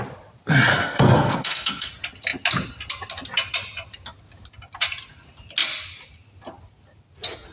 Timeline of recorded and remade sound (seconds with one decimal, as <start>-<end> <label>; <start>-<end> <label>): 0.0-0.7 recorded; 0.7-1.9 remade; 1.9-7.5 recorded